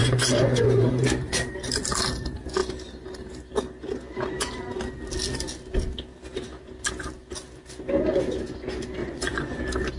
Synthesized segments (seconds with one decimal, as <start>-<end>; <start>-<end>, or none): 0.0-0.9; 9.0-9.6